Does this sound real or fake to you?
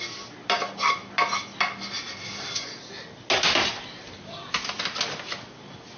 real